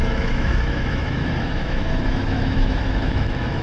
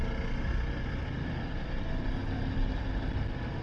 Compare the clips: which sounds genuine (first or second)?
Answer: second